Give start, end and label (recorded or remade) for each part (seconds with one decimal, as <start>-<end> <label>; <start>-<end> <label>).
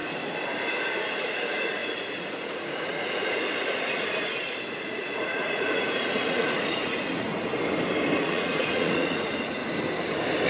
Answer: 0.0-0.7 recorded; 0.7-7.3 remade; 7.3-8.2 recorded; 8.2-9.6 remade; 9.6-10.5 recorded